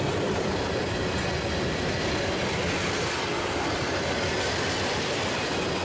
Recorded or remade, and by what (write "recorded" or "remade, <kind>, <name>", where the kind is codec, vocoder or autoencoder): recorded